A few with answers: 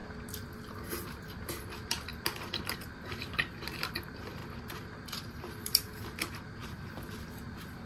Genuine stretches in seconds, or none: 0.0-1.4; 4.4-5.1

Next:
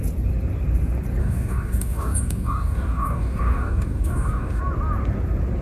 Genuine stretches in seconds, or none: 0.0-1.2; 4.6-5.6

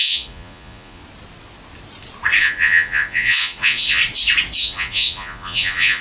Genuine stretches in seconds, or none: 1.0-2.4; 4.0-4.6

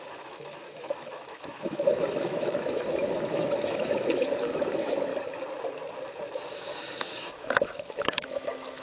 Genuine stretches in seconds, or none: 5.1-7.0

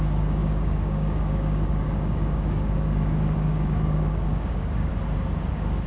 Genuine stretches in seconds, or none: 4.9-5.5

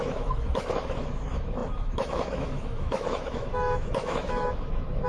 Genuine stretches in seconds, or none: none

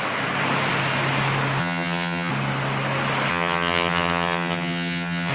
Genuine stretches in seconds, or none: 0.0-1.6; 2.3-3.3